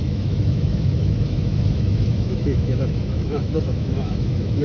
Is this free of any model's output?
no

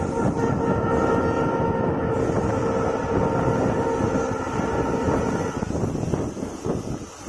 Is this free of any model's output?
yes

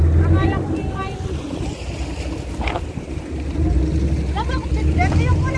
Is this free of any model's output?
yes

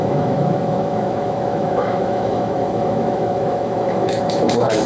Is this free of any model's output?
no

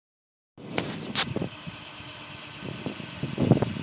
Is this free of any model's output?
yes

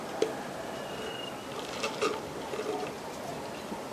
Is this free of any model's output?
yes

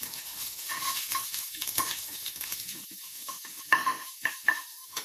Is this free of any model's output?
no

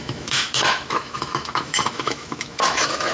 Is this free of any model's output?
no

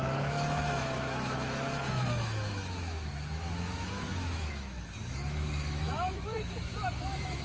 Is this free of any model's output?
no